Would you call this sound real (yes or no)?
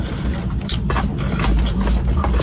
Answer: yes